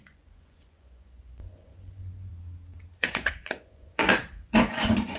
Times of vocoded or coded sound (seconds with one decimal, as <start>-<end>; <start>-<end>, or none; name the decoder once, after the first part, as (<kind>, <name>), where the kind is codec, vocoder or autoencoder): 0.0-2.3 (vocoder, Vocos); 3.0-5.2